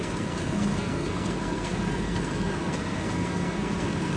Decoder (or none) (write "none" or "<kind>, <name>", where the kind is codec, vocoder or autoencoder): codec, SNAC